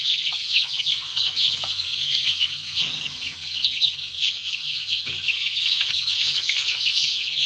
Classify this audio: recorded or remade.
remade